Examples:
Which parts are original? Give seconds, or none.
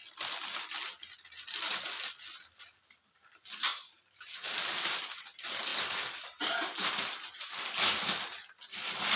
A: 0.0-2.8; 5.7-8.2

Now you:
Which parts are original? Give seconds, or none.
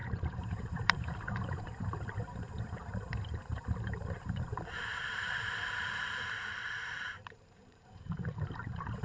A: none